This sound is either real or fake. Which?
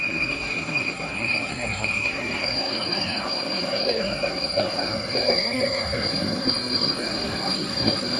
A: fake